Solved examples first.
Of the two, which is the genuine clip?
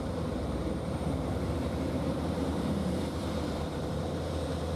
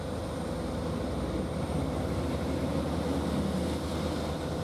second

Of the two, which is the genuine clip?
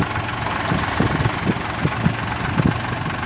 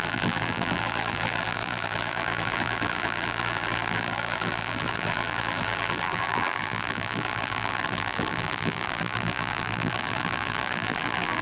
first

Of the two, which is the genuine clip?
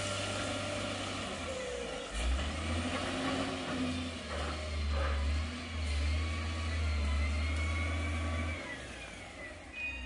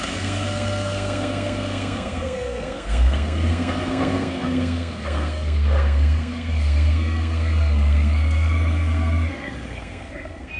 first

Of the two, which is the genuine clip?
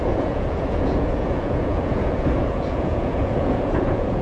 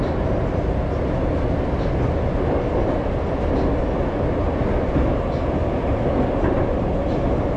second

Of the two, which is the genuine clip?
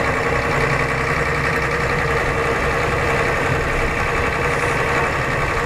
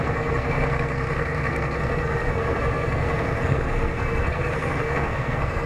first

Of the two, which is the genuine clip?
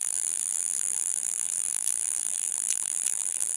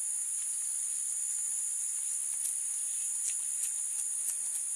second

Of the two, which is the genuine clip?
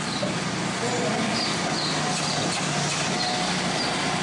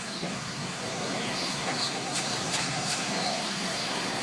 first